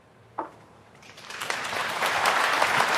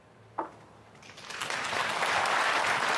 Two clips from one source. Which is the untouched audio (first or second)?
second